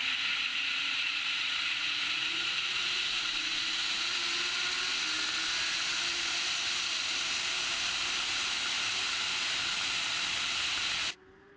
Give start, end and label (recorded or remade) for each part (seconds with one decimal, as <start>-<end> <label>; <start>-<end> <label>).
0.0-4.2 remade; 4.2-11.6 recorded